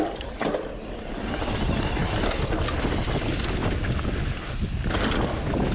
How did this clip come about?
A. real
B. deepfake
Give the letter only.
A